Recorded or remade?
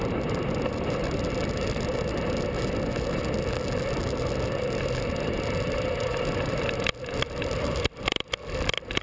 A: recorded